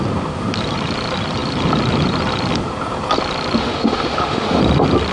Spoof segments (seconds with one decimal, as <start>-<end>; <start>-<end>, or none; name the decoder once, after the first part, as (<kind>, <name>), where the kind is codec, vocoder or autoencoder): 3.6-4.6 (autoencoder, DAC-VAE)